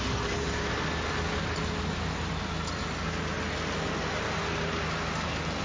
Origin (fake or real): real